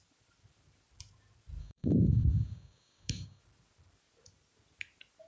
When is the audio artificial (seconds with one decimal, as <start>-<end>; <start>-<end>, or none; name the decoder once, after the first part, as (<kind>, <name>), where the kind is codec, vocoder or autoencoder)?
1.6-3.4 (codec, DAC)